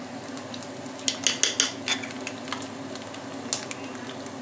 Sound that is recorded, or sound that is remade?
recorded